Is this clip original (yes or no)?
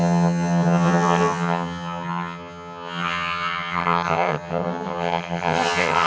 no